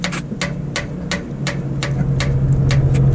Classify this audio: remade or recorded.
recorded